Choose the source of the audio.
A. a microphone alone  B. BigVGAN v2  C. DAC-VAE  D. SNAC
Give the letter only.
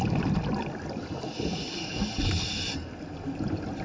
A